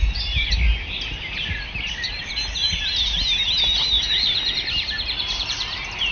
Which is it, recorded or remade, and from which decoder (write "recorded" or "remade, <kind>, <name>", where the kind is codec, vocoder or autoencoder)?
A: recorded